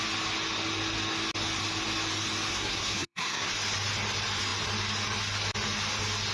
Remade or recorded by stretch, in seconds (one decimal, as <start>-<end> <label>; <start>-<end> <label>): 0.0-2.5 recorded; 2.5-3.5 remade; 3.5-6.3 recorded